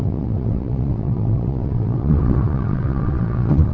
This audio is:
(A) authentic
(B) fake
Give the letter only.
B